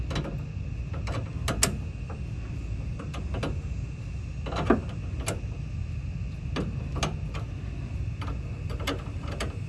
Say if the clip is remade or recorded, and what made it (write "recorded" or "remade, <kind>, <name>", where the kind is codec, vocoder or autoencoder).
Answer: recorded